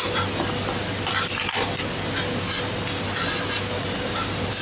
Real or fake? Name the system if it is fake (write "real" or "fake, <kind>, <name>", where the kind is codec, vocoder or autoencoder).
real